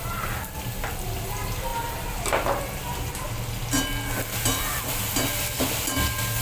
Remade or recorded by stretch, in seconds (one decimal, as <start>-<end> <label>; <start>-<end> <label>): 0.0-6.4 recorded